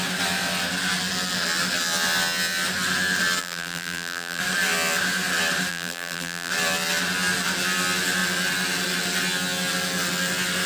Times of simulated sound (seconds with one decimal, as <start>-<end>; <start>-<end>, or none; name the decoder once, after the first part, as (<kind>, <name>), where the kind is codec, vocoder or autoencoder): 3.4-4.4 (vocoder, BigVGAN v2); 5.7-6.5